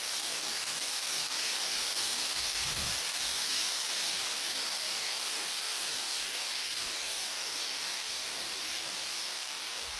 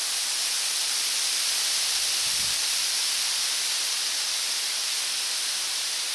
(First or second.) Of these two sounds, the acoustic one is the second